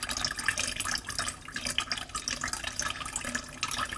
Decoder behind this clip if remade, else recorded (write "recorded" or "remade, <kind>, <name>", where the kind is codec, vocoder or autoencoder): recorded